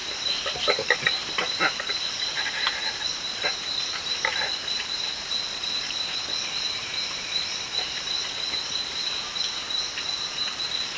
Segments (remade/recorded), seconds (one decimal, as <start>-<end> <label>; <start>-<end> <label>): 0.0-11.0 remade